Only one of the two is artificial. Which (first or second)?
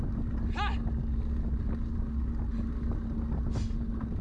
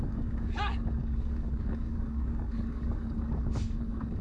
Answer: second